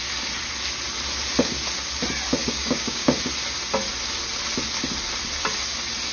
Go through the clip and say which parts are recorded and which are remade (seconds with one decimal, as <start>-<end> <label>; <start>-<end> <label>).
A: 0.0-2.4 recorded; 2.4-3.1 remade; 3.1-6.1 recorded